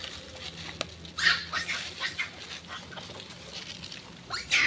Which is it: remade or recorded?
recorded